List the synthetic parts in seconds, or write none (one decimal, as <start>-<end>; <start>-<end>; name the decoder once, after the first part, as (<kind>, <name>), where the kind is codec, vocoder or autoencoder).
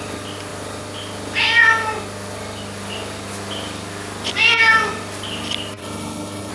5.8-6.5 (codec, HILCodec)